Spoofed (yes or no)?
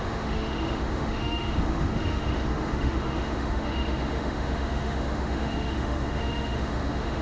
yes